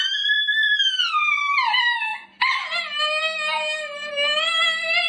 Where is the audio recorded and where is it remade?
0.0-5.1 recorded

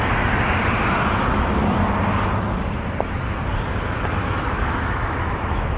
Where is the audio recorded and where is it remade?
0.0-4.2 recorded; 4.2-5.8 remade

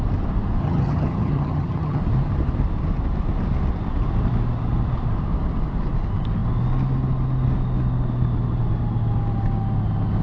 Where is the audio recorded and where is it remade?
0.0-0.6 recorded; 0.6-2.0 remade; 2.0-10.2 recorded

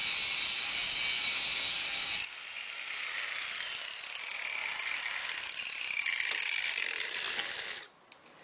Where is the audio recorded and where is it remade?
0.0-8.4 recorded

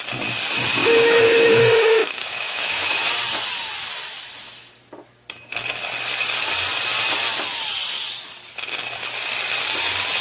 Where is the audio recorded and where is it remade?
0.0-0.8 recorded; 0.8-1.6 remade; 1.6-2.0 recorded; 2.0-2.9 remade; 2.9-10.2 recorded

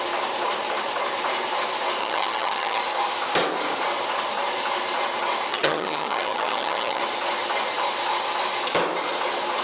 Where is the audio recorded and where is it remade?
0.0-2.0 recorded; 2.0-2.8 remade; 2.8-5.5 recorded; 5.5-7.0 remade; 7.0-9.6 recorded

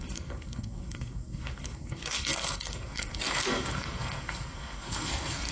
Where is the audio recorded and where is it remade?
0.0-5.5 remade